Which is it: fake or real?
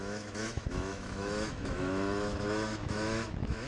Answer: fake